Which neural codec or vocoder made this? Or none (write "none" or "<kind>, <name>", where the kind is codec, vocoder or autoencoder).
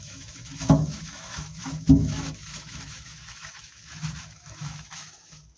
autoencoder, DAC-VAE